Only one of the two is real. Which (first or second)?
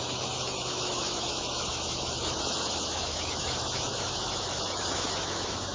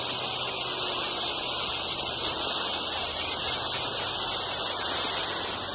second